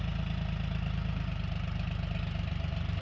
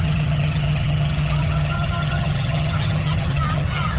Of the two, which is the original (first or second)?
first